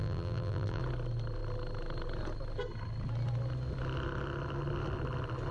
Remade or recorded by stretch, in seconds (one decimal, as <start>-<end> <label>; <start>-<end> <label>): 0.0-0.8 remade; 0.8-5.5 recorded